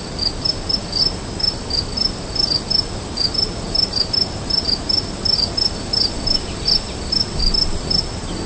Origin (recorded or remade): recorded